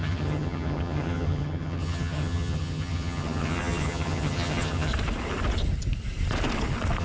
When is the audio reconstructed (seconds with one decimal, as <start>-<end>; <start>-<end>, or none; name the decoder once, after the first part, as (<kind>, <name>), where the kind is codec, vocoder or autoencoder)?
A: 0.0-4.9 (vocoder, HiFi-GAN)